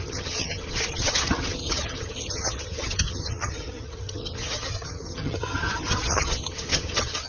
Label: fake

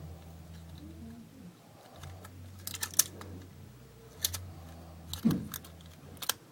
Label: real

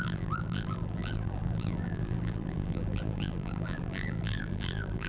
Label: fake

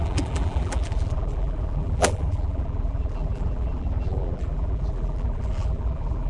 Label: fake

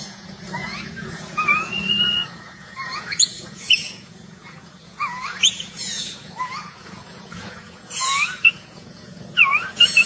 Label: fake